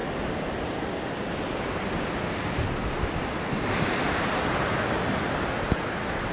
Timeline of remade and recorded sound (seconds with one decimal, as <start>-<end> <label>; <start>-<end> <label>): 0.0-6.3 recorded